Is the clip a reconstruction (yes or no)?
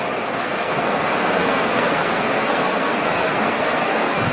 yes